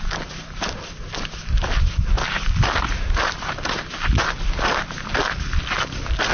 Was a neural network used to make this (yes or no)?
yes